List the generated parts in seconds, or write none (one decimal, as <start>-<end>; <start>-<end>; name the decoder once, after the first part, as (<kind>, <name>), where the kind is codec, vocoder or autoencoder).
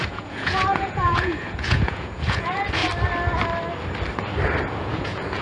0.0-2.8 (vocoder, Vocos); 4.7-5.4